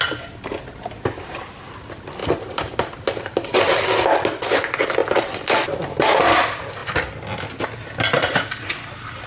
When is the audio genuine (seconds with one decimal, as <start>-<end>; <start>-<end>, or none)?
0.0-9.3